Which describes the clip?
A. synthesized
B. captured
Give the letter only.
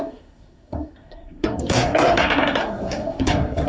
A